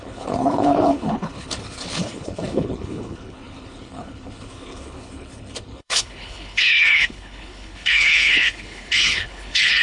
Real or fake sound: fake